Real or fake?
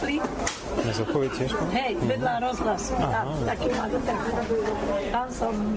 real